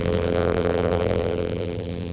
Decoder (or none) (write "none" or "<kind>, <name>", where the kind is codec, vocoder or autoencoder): vocoder, BigVGAN v2